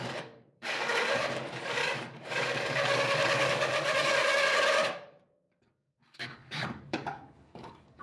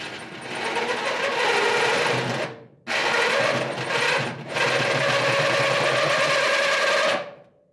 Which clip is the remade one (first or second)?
first